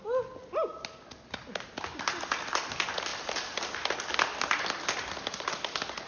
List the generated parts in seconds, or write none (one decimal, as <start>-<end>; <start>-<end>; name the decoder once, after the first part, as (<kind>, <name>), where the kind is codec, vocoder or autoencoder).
none